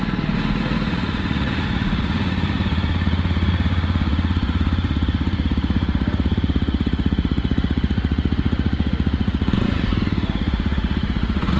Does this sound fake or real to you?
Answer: fake